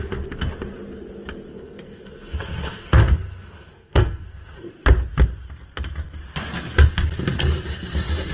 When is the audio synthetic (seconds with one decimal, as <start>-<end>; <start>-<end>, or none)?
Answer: 1.5-4.7